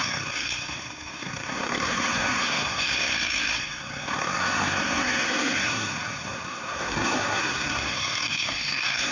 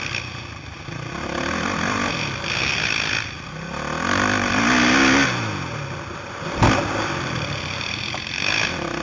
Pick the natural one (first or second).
second